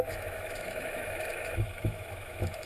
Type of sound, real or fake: fake